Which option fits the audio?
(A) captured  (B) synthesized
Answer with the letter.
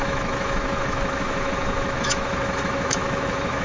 B